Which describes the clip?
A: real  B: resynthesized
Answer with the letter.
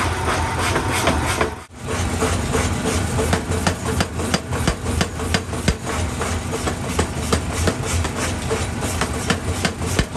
A